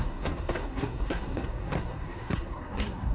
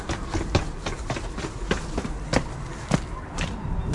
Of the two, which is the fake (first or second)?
first